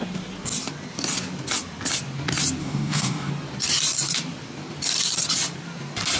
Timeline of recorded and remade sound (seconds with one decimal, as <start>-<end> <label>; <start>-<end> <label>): 0.0-2.6 recorded; 2.6-3.3 remade; 3.3-6.2 recorded

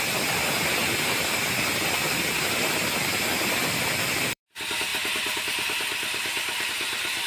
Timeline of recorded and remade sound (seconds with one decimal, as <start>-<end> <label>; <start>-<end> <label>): 0.0-3.6 recorded; 3.6-4.4 remade; 4.4-4.9 recorded; 4.9-6.7 remade; 6.7-7.3 recorded

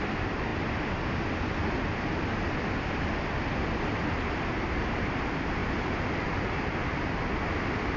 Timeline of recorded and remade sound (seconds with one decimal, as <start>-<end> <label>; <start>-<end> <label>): 0.0-8.0 recorded

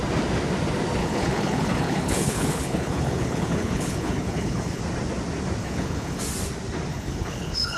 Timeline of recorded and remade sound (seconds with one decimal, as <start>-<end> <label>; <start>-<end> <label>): 0.0-1.0 recorded; 1.0-4.8 remade; 4.8-5.6 recorded; 5.6-6.2 remade; 6.2-6.9 recorded; 6.9-7.8 remade

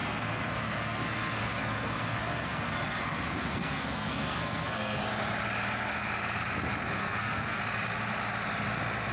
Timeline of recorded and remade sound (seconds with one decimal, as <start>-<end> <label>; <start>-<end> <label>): 0.0-5.0 remade; 5.0-7.0 recorded; 7.0-7.6 remade; 7.6-9.1 recorded

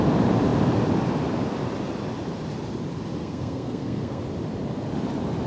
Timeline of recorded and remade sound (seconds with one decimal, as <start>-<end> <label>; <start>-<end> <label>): 0.0-3.2 recorded; 3.2-4.2 remade; 4.2-5.5 recorded

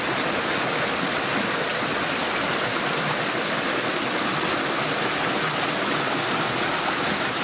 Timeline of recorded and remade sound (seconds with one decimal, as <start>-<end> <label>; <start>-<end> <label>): 0.0-7.4 recorded

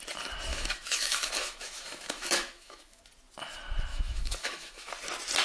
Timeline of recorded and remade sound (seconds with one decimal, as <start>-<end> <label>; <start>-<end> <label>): 0.0-0.5 recorded; 0.5-3.0 remade; 3.0-3.9 recorded; 3.9-4.9 remade; 4.9-5.4 recorded